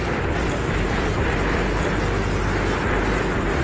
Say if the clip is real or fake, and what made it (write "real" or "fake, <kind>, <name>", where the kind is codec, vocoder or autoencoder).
real